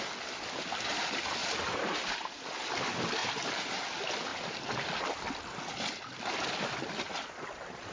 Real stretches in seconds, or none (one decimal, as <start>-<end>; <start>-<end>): 0.0-1.4; 2.4-3.2; 3.8-7.9